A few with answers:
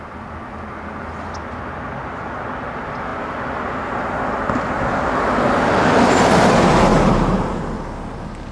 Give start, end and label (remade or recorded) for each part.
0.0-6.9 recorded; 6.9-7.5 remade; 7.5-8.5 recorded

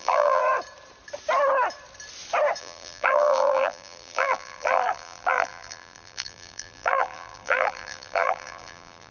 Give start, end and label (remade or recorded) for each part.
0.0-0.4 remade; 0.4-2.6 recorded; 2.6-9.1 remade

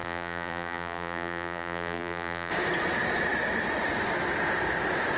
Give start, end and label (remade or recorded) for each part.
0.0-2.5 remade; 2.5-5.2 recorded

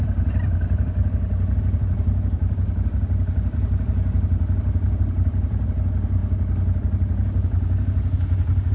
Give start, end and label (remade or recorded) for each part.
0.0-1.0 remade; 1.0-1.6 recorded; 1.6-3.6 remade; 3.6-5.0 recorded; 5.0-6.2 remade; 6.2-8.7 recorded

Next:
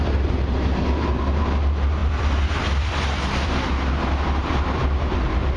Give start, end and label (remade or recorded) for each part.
0.0-2.0 recorded; 2.0-3.7 remade; 3.7-5.6 recorded

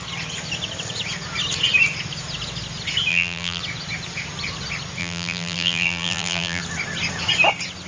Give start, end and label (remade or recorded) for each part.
0.0-3.1 recorded; 3.1-3.6 remade; 3.6-5.0 recorded; 5.0-6.6 remade; 6.6-7.9 recorded